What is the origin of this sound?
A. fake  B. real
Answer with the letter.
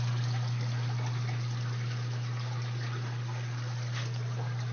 B